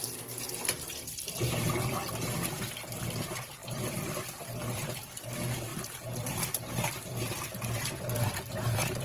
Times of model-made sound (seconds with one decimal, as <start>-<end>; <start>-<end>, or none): 3.6-5.3; 5.7-6.5